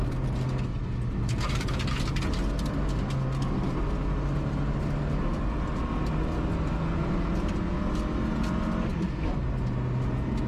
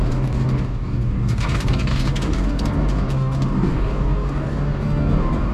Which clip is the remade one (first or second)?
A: second